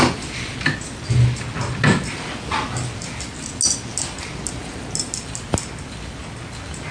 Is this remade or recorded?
recorded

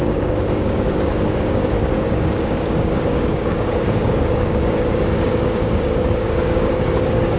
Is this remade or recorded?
remade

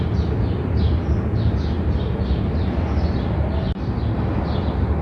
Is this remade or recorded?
recorded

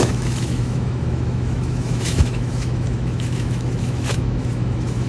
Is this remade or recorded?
remade